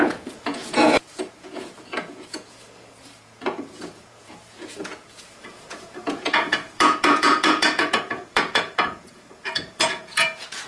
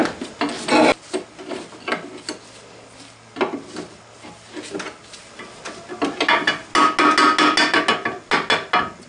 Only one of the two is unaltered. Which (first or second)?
second